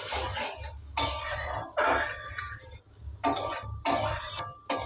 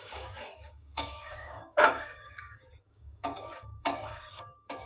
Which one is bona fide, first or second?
first